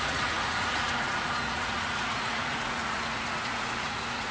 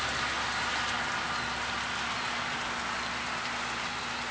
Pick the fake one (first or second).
first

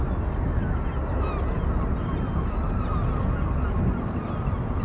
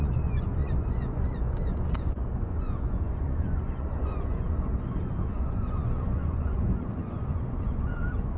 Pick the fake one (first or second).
second